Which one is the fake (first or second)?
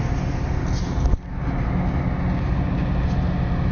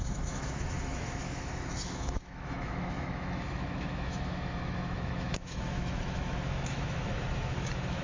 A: second